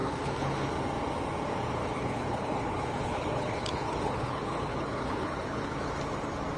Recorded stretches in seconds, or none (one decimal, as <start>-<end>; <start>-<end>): 0.7-1.8; 5.8-6.6